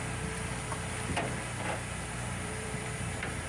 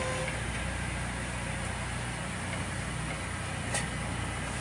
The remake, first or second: first